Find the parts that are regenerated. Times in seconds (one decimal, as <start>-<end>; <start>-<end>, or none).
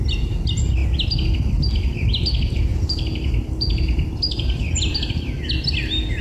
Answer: 2.7-5.0